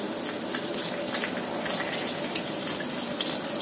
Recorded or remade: recorded